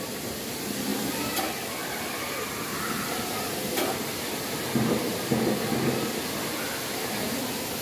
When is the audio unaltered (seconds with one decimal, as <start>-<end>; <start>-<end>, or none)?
0.0-0.9; 1.4-1.8; 5.2-7.8